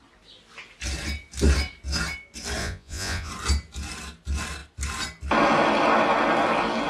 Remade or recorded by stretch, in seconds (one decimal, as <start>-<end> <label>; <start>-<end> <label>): 0.0-2.6 recorded; 2.6-3.3 remade; 3.3-6.9 recorded